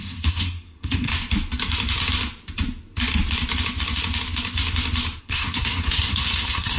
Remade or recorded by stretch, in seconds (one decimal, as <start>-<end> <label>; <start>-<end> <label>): 0.0-1.1 remade; 1.1-5.2 recorded; 5.2-6.8 remade